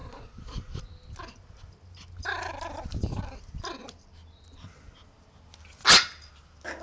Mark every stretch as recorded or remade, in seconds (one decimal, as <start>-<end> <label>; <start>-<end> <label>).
0.0-0.8 remade; 0.8-2.9 recorded; 2.9-3.4 remade; 3.4-6.8 recorded